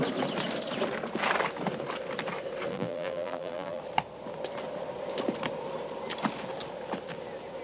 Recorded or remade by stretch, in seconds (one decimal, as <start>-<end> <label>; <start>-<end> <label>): 0.0-2.7 recorded; 2.7-3.8 remade; 3.8-7.6 recorded